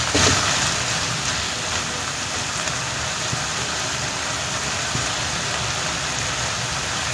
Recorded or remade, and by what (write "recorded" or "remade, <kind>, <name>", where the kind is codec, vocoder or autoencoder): recorded